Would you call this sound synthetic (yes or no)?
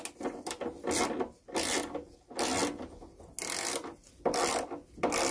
no